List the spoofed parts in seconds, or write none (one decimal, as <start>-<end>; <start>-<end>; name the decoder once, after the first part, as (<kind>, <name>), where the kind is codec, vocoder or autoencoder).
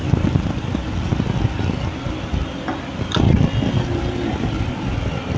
none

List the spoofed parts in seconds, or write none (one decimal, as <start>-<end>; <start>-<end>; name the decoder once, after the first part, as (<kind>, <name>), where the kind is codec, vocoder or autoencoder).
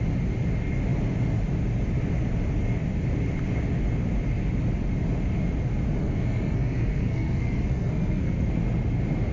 6.0-8.6 (codec, SNAC)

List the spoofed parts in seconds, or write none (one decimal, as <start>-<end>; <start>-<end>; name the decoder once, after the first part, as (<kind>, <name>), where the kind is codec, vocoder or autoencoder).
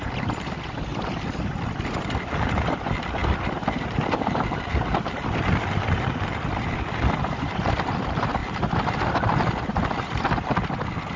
0.9-2.0 (vocoder, BigVGAN v2); 3.2-6.5; 8.4-9.5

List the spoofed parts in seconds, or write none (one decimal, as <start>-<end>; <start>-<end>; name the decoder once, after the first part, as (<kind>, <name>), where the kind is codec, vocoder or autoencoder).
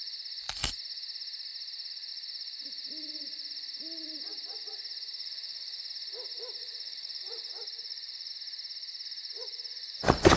5.2-5.9 (vocoder, Vocos); 6.6-8.3; 9.2-10.4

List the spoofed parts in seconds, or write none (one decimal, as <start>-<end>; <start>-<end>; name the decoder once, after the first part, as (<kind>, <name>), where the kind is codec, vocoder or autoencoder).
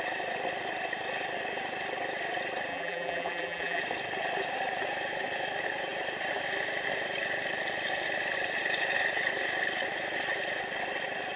2.7-3.8 (vocoder, BigVGAN v2)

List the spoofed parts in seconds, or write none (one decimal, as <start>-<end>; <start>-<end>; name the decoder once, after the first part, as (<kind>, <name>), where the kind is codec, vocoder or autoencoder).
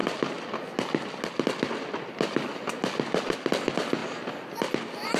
none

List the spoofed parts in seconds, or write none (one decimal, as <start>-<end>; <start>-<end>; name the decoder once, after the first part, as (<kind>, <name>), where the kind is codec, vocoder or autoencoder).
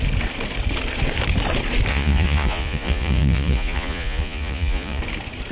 1.9-5.0 (vocoder, Vocos)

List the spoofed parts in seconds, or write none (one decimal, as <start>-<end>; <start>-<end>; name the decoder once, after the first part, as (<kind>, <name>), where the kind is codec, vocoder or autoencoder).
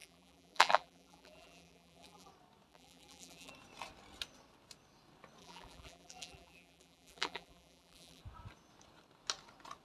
0.0-2.3 (vocoder, BigVGAN v2); 2.7-3.5; 5.4-8.2